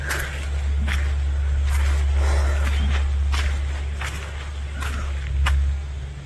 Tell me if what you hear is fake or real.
real